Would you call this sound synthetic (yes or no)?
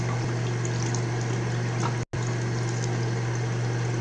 no